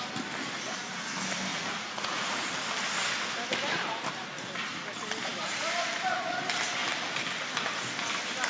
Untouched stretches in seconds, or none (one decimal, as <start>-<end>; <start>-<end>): 0.0-1.5; 2.5-8.5